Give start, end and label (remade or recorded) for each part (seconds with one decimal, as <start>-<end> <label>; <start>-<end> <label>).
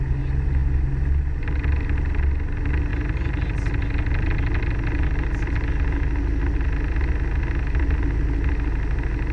0.0-9.3 recorded